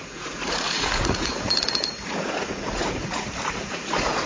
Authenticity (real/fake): fake